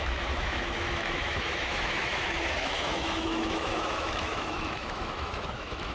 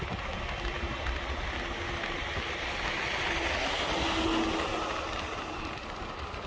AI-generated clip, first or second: first